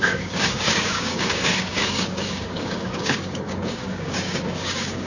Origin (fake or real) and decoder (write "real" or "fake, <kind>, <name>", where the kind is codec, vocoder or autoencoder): fake, codec, DAC